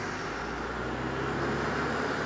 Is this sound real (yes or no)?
yes